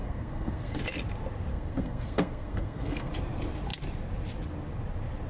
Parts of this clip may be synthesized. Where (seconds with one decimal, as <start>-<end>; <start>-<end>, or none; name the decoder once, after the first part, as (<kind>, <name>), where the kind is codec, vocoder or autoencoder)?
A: 0.0-0.8 (codec, SNAC); 1.5-3.1